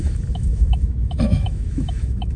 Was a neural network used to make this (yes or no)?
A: yes